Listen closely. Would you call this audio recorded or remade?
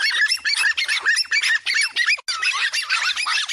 recorded